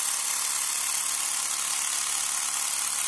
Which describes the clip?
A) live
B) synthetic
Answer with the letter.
A